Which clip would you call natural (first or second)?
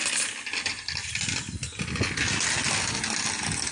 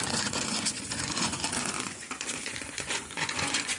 first